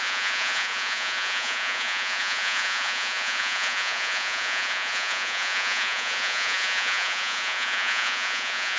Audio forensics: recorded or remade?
remade